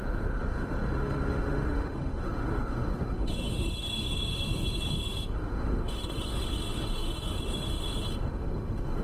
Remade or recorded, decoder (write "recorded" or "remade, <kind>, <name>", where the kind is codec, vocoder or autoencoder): remade, autoencoder, DAC-VAE